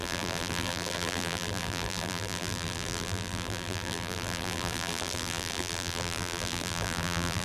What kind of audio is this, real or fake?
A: fake